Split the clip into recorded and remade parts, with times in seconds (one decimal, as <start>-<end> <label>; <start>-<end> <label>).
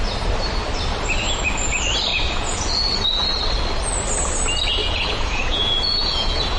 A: 0.0-2.1 recorded; 2.1-2.6 remade; 2.6-4.8 recorded; 4.8-6.6 remade